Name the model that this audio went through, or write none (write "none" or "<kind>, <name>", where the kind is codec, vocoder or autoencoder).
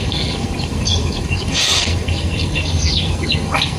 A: codec, SNAC